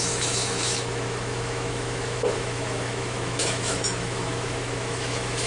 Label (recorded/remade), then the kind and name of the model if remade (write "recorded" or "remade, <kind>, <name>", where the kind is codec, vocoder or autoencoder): remade, autoencoder, DAC-VAE